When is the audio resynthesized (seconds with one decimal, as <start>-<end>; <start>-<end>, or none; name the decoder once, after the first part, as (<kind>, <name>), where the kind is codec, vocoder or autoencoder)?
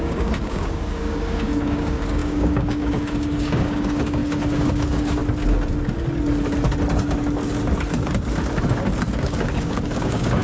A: 0.0-5.2 (codec, DAC); 8.6-10.4